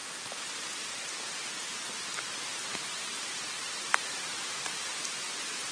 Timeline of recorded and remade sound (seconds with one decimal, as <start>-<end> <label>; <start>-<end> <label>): 0.0-0.8 recorded; 0.8-5.7 remade